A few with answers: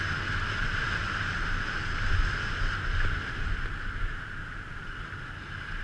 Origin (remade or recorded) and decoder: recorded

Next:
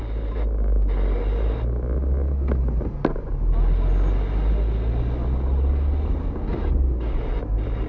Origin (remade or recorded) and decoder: recorded